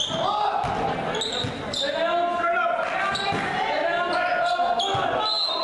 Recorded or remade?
recorded